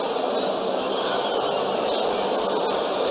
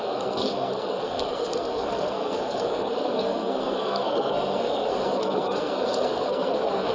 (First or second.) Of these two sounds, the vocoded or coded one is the second